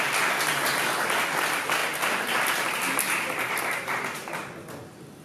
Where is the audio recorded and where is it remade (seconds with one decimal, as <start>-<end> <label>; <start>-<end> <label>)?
0.0-5.2 recorded